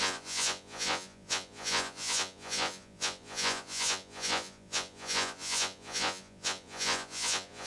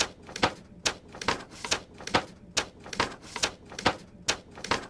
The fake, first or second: first